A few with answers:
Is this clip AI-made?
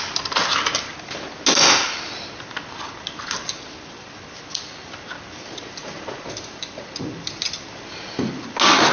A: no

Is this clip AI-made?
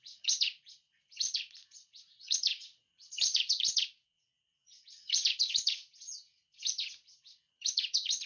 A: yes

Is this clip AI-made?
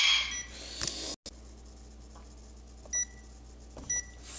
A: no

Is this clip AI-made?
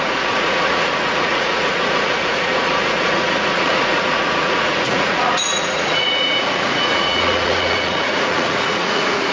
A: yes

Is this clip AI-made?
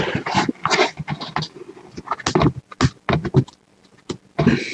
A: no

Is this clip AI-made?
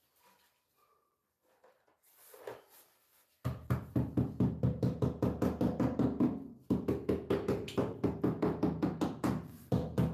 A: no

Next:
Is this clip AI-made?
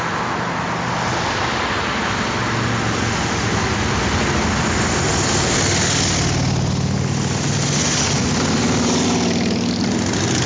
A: no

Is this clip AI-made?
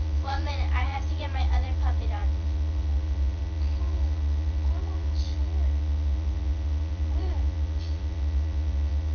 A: yes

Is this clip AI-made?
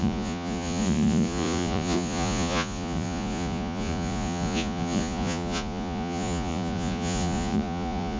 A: yes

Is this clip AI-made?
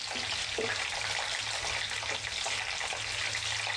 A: no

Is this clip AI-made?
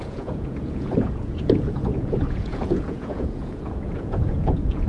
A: yes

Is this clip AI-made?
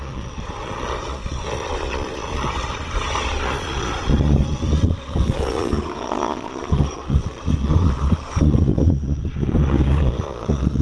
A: yes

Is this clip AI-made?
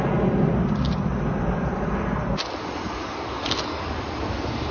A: no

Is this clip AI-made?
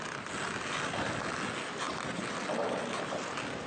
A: no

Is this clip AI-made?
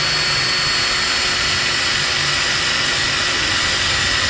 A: no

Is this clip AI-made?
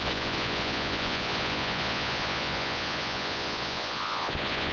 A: yes